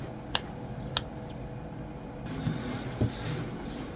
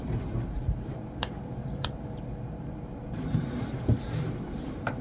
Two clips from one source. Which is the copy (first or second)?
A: second